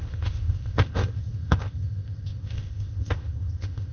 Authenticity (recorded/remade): remade